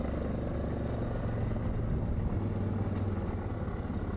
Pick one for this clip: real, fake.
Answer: real